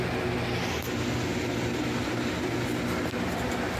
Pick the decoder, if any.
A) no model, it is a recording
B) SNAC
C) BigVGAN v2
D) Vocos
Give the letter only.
A